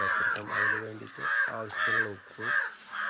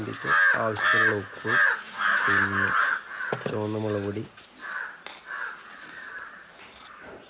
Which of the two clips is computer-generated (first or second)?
first